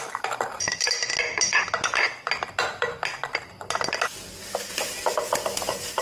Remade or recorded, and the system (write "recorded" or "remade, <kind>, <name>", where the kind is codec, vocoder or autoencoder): recorded